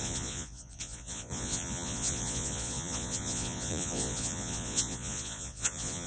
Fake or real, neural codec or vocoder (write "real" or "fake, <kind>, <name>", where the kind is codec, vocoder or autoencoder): fake, vocoder, Vocos